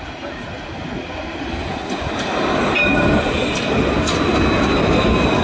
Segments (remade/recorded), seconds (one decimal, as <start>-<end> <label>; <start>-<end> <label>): 0.0-5.4 recorded